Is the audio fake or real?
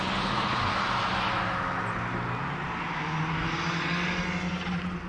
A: real